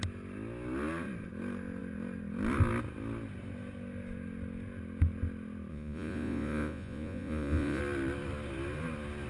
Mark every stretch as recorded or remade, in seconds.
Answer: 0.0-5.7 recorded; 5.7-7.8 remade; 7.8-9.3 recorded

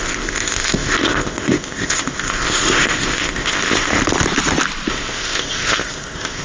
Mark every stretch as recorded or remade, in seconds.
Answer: 0.0-4.0 remade; 4.0-4.9 recorded; 4.9-6.4 remade

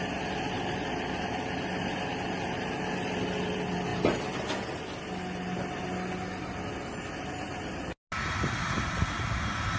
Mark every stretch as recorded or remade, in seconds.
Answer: 0.0-9.8 recorded